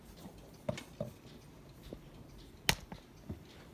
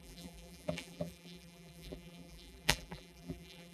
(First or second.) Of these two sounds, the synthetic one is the second